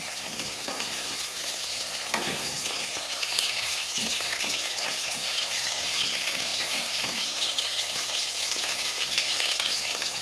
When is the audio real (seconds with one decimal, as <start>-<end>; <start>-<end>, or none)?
none